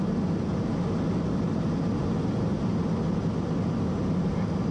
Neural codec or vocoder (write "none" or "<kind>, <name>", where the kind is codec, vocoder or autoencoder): none